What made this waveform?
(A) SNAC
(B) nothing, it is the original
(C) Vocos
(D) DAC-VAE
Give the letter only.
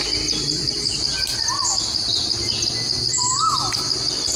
B